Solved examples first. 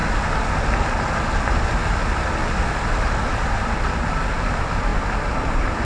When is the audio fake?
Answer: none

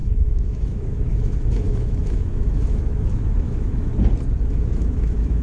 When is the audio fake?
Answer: 0.0-3.9 (autoencoder, DAC-VAE); 4.5-5.4

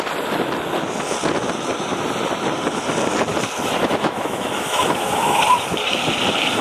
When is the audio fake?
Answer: 3.8-5.4 (autoencoder, DAC-VAE)